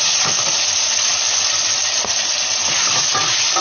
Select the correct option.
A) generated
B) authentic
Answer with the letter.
B